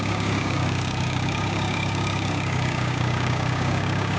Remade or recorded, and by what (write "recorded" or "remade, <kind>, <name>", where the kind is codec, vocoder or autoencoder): remade, codec, DAC